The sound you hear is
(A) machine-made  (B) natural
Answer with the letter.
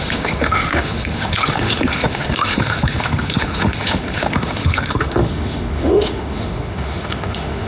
A